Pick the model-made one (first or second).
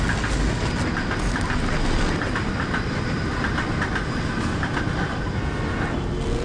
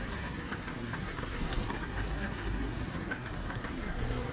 second